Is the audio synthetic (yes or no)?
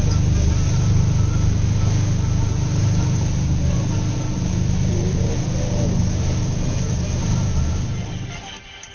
no